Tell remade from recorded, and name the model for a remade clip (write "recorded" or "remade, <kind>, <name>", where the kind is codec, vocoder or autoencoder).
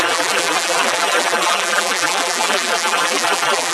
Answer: remade, vocoder, BigVGAN v2